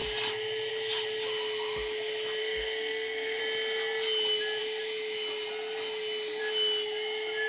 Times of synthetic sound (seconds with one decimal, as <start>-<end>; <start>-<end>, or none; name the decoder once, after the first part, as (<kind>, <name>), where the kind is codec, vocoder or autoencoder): 2.4-3.4 (codec, SNAC)